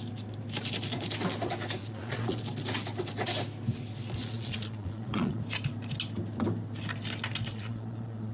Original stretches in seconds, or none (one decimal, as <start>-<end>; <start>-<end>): 0.0-1.8; 2.4-4.2; 5.4-7.5